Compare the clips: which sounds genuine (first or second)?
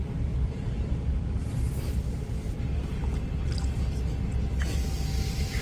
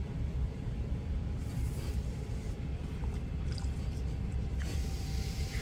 first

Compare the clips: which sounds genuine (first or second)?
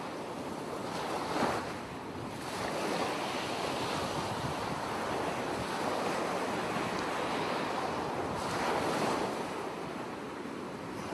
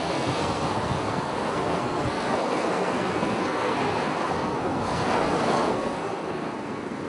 first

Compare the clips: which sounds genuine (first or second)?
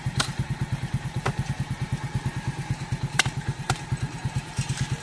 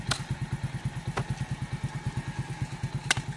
second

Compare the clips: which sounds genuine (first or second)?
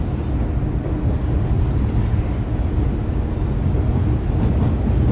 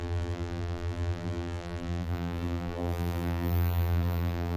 first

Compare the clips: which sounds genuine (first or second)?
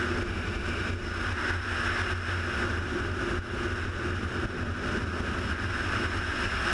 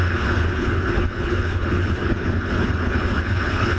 first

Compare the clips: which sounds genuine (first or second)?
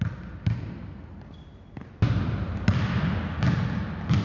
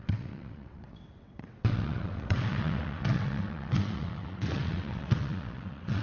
first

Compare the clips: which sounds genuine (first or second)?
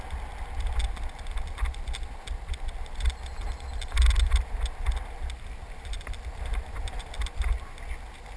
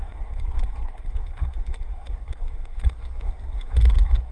first